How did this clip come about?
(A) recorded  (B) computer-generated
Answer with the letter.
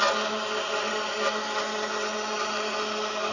A